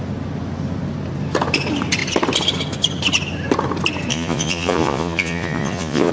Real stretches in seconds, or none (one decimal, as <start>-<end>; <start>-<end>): 0.0-4.1